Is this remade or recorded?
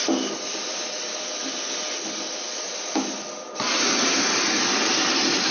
recorded